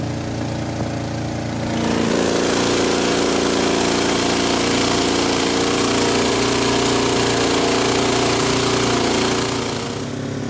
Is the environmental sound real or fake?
real